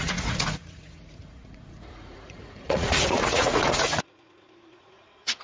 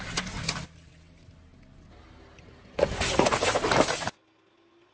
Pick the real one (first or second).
second